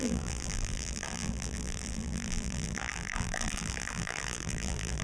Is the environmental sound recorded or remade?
remade